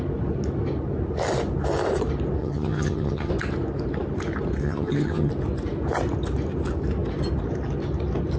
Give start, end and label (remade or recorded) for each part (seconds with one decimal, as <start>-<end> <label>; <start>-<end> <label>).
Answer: 0.0-2.4 recorded; 2.4-3.3 remade; 3.3-4.6 recorded; 4.6-5.3 remade; 5.3-8.4 recorded